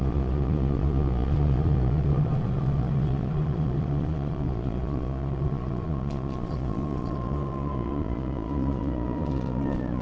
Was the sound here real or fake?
fake